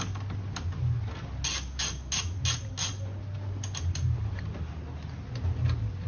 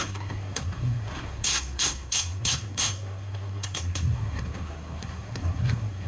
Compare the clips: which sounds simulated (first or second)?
second